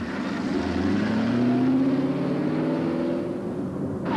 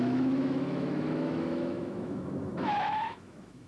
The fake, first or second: second